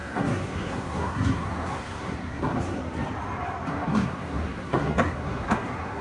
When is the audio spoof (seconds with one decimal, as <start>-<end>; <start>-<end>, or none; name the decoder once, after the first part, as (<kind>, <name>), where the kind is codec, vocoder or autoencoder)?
0.0-2.8 (codec, SNAC); 3.7-6.0